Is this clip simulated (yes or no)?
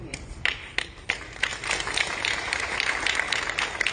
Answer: yes